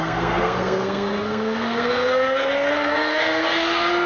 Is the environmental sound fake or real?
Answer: fake